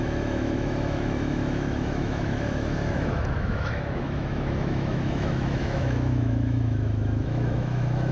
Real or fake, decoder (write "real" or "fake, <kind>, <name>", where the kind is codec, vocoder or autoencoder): fake, autoencoder, DAC-VAE